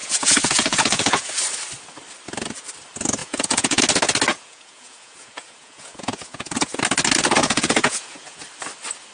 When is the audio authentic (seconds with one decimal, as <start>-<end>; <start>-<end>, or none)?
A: 1.3-3.2; 3.8-4.3; 6.8-7.4; 8.4-9.1